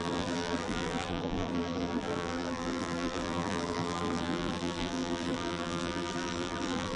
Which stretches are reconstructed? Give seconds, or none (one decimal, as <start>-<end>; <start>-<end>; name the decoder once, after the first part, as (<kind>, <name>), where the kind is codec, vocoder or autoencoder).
0.0-7.0 (vocoder, BigVGAN v2)